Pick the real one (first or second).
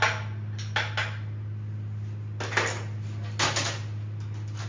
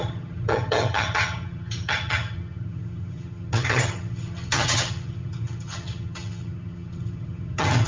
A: first